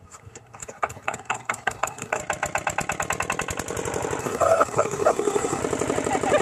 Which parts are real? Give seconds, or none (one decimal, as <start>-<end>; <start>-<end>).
2.2-4.2; 5.6-6.4